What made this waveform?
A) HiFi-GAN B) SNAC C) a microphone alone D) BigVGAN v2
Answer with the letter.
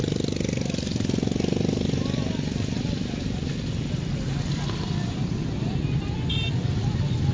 C